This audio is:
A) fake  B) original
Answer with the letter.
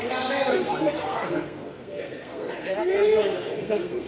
A